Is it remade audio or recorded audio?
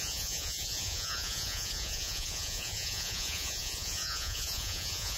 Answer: remade